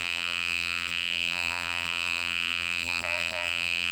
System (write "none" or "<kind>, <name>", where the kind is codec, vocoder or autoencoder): vocoder, BigVGAN v2